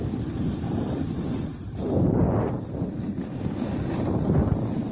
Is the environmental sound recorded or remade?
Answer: recorded